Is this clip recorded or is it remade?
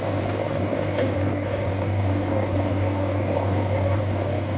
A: remade